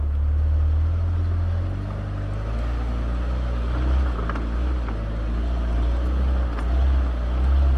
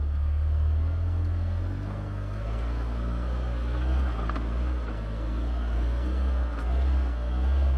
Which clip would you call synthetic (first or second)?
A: second